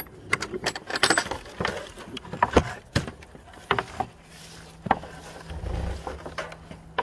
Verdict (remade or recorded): recorded